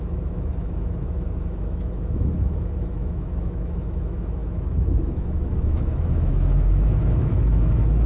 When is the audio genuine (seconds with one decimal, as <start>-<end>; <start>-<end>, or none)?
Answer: none